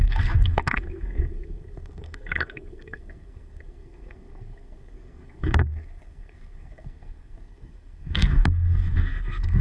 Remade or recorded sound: remade